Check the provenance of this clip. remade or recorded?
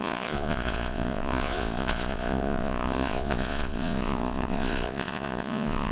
remade